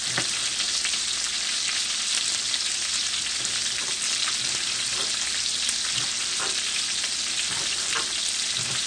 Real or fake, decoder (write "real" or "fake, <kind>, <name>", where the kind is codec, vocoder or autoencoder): real